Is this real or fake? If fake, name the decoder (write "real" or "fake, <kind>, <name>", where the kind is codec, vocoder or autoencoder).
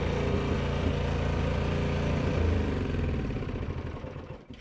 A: fake, vocoder, BigVGAN v2